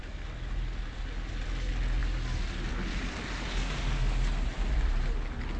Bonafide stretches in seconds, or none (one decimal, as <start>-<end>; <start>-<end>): 0.0-5.6